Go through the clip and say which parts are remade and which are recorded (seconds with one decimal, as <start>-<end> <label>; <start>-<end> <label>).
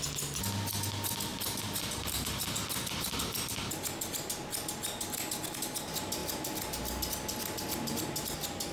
0.0-1.3 recorded; 1.3-2.7 remade; 2.7-8.7 recorded